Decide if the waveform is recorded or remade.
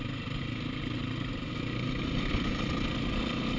recorded